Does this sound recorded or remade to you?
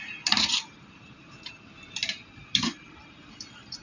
remade